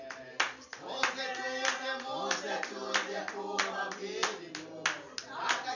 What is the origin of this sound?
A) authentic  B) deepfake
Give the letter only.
A